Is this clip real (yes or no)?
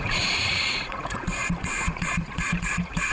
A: no